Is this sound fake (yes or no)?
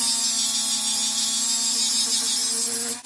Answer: no